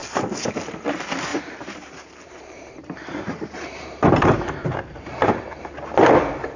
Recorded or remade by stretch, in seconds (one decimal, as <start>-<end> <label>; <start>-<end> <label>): 0.0-0.5 remade; 0.5-1.3 recorded; 1.3-5.3 remade; 5.3-6.6 recorded